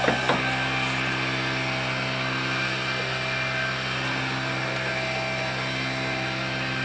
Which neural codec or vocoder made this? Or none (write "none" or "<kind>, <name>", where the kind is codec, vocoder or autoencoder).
none